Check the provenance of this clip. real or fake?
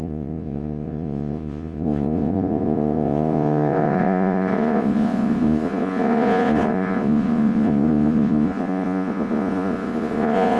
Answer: fake